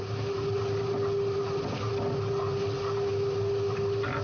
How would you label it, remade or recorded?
recorded